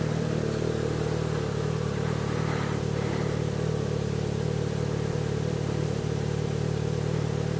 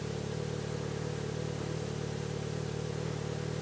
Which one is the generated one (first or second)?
first